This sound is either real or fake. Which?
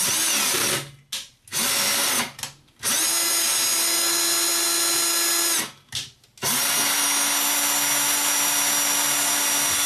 real